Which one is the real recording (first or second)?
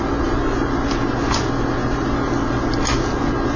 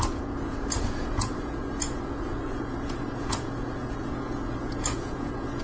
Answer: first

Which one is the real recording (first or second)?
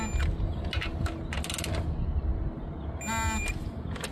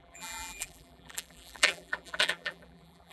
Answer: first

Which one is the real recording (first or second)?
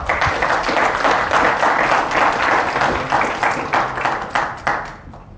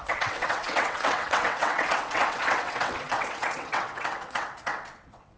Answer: first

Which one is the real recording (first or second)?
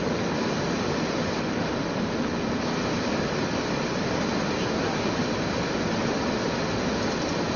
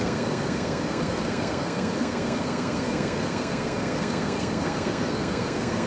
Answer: first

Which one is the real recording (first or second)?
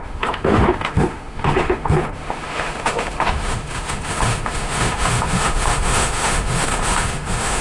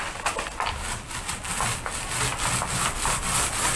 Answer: second